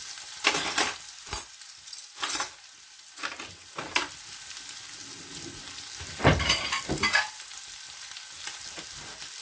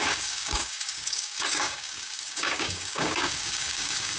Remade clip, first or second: second